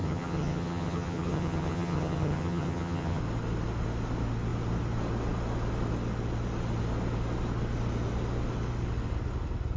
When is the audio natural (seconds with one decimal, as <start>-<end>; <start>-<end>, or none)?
3.2-9.8